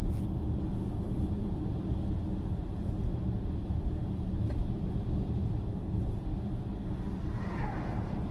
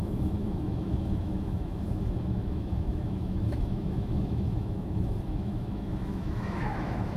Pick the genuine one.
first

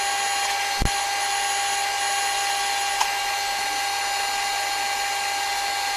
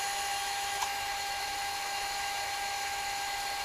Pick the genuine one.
first